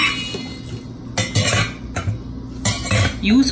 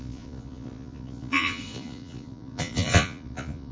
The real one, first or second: first